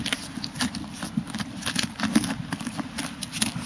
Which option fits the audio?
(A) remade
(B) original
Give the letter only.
B